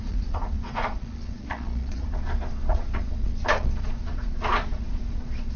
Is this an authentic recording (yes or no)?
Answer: no